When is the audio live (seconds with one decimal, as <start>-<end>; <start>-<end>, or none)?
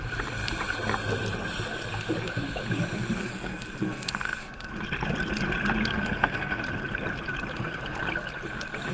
0.0-3.2; 4.7-5.9; 6.6-8.9